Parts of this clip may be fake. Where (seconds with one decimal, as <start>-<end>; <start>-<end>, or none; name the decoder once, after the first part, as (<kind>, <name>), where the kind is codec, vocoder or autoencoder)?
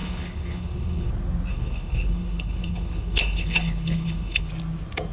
0.0-1.1 (codec, HILCodec); 1.5-4.5